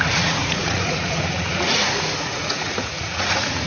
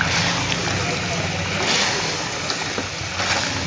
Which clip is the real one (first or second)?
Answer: second